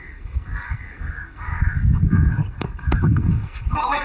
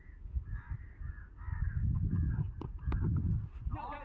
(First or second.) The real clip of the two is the second